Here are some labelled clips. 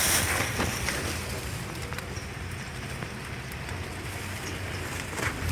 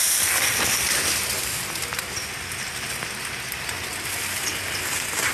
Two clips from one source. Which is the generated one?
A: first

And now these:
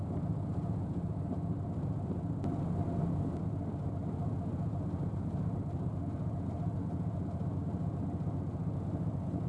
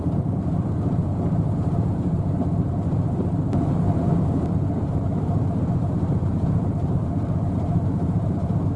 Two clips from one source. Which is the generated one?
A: second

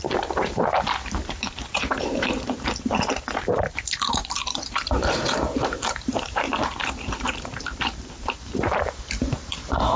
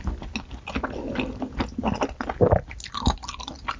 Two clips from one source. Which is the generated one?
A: first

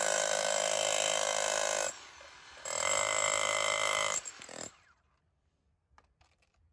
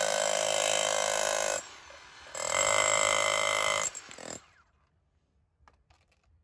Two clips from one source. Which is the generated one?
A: first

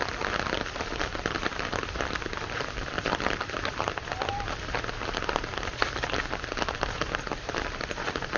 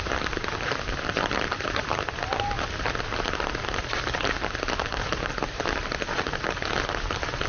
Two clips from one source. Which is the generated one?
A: second